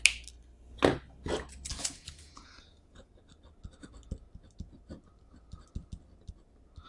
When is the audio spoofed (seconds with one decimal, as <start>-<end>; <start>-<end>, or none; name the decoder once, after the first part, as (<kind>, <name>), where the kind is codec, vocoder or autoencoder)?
1.7-3.1 (vocoder, Vocos)